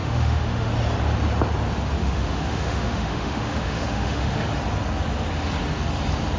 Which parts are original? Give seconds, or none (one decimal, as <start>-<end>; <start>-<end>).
0.7-2.0; 4.5-6.4